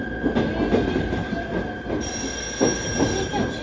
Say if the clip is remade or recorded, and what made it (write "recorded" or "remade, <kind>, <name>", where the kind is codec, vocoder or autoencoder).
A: recorded